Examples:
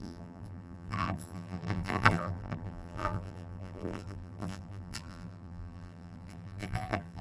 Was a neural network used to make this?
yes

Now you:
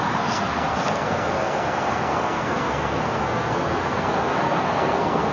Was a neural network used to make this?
yes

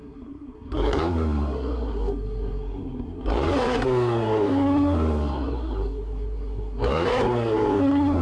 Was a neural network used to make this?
yes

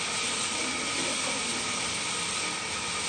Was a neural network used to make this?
no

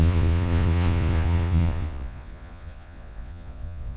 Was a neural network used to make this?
yes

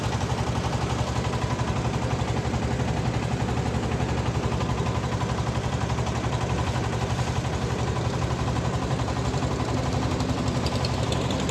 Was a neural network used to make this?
no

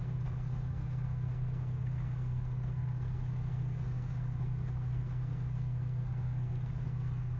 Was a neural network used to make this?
yes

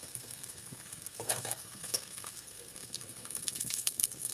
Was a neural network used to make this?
yes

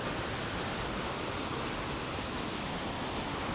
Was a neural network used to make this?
no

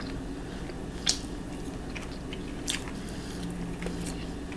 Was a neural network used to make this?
no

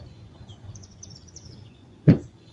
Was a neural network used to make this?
yes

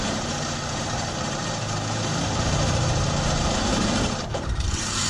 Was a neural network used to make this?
yes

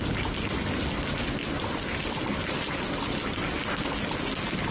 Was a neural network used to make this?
no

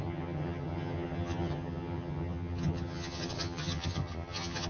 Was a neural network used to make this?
yes